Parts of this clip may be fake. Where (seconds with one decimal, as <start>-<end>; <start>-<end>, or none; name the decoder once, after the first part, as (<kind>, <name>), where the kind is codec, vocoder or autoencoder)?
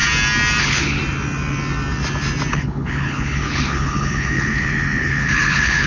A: 0.6-1.0 (codec, HILCodec); 2.5-5.9